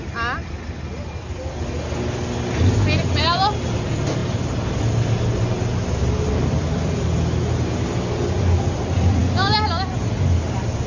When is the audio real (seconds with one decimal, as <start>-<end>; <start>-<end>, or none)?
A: 0.0-10.9